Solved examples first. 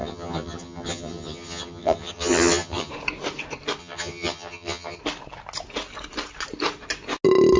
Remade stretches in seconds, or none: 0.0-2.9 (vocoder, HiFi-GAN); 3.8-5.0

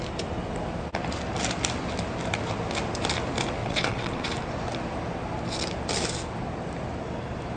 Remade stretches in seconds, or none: 3.6-4.4 (vocoder, WaveNeXt)

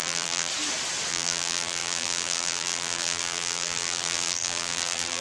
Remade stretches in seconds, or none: 0.0-0.5 (vocoder, BigVGAN v2); 1.1-5.2